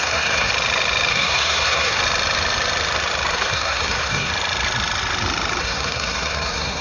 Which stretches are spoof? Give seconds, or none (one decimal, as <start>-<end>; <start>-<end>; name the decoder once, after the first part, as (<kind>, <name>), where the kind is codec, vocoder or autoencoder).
0.0-0.5 (codec, SNAC); 1.1-2.0; 3.3-4.3; 5.6-6.8